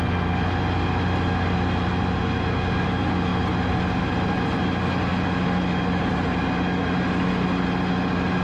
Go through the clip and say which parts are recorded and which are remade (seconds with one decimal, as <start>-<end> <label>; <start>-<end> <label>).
0.0-8.4 recorded

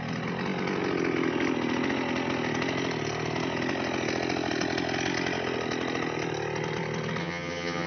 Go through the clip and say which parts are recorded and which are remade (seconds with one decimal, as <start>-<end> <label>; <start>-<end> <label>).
0.0-7.2 recorded; 7.2-7.9 remade